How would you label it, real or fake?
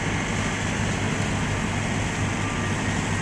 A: real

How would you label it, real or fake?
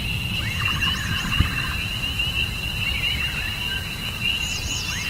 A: real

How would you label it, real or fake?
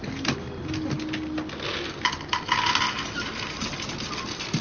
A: real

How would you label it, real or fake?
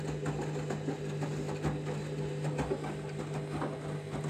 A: real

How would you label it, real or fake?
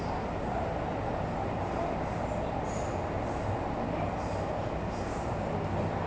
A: real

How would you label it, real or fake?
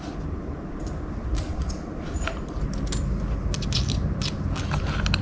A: real